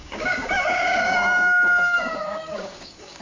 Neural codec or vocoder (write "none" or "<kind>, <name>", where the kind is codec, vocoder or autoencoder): codec, DAC